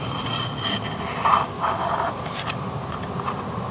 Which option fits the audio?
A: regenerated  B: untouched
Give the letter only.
B